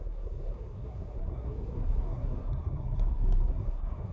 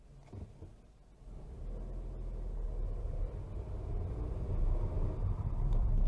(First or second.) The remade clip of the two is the first